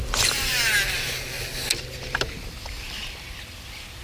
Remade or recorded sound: recorded